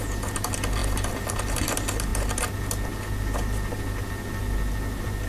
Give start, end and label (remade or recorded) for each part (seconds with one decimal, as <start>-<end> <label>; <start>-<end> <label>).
0.0-0.8 recorded; 0.8-1.7 remade; 1.7-5.3 recorded